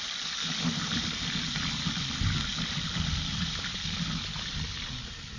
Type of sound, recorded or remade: recorded